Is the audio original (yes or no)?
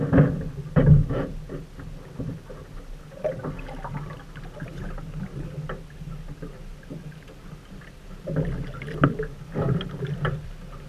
yes